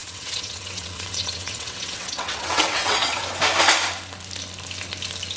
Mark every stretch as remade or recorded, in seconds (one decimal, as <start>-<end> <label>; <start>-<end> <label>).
0.0-3.2 remade; 3.2-5.4 recorded